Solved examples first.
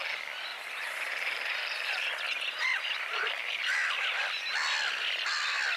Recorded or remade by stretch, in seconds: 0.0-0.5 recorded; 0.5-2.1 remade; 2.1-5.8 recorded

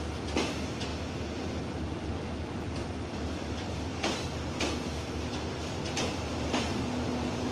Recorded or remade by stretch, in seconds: 0.0-7.5 recorded

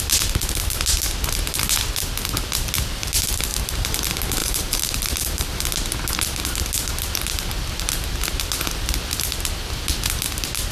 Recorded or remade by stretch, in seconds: 0.0-3.5 recorded; 3.5-4.0 remade; 4.0-4.4 recorded; 4.4-5.6 remade; 5.6-10.7 recorded

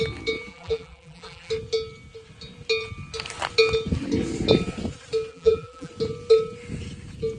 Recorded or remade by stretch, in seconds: 0.0-0.5 recorded; 0.5-1.5 remade; 1.5-5.3 recorded; 5.3-5.9 remade; 5.9-7.4 recorded